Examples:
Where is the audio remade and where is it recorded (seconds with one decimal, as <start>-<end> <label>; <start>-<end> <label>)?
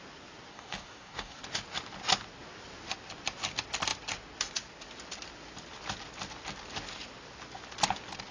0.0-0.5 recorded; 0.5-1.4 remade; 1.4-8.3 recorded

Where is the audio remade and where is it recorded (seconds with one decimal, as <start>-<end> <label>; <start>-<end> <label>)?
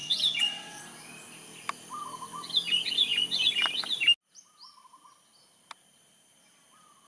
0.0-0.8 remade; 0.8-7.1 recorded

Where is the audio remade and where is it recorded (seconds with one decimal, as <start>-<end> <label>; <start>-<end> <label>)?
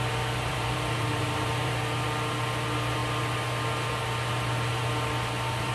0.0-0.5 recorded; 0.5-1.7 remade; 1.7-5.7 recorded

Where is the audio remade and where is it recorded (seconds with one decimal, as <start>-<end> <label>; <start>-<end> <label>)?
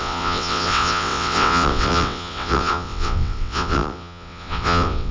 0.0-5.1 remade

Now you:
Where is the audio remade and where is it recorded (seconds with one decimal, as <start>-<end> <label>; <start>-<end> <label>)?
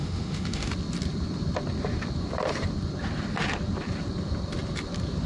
0.0-0.7 remade; 0.7-5.3 recorded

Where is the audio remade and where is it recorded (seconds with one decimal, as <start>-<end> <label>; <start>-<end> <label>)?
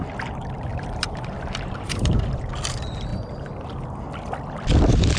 0.0-0.7 recorded; 0.7-2.5 remade; 2.5-5.2 recorded